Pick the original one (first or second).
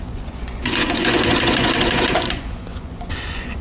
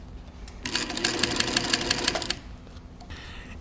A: second